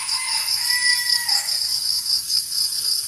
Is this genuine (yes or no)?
no